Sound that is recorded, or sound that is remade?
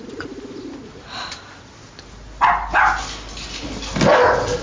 recorded